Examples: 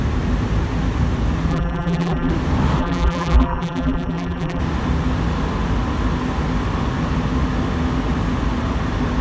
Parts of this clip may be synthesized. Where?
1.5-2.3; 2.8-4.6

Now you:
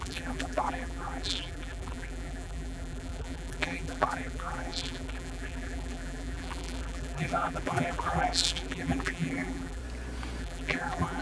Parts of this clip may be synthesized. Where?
0.0-9.8; 10.4-11.2

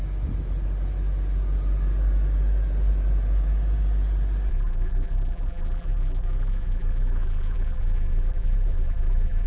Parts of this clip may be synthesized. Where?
4.5-9.5

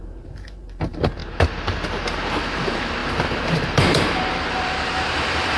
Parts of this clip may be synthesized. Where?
0.0-1.2; 2.4-5.6

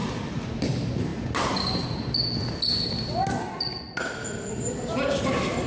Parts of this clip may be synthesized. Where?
0.6-1.1; 4.5-5.7

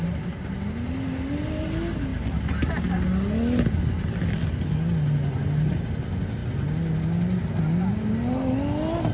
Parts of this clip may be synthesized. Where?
none

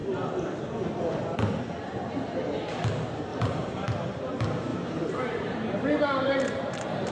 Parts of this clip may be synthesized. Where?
3.3-4.3; 4.7-7.1

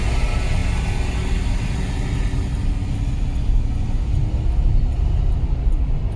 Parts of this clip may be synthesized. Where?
none